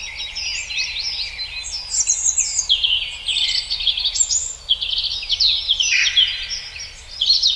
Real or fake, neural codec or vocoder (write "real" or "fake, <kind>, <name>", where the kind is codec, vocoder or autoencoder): real